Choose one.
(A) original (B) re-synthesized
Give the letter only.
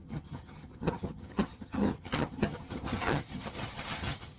B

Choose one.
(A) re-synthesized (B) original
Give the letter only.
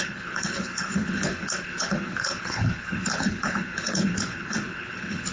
A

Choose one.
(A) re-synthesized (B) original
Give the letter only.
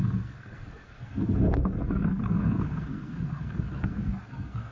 A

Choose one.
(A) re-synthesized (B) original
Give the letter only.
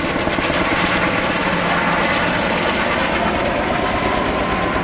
B